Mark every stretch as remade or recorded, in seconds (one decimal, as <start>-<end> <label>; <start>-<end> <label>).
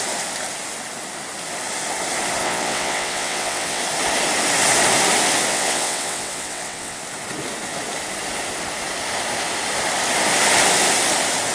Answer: 0.0-2.4 recorded; 2.4-3.8 remade; 3.8-5.5 recorded; 5.5-7.0 remade; 7.0-11.5 recorded